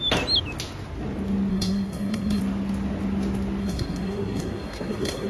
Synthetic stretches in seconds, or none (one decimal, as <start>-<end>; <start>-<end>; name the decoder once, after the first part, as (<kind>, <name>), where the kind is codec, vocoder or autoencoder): 1.5-2.4 (codec, SNAC); 3.6-5.3